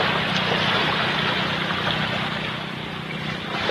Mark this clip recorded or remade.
recorded